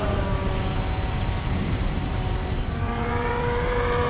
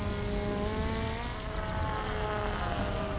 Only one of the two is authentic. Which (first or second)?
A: second